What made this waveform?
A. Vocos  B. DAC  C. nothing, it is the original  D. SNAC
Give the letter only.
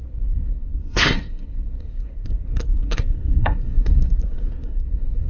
D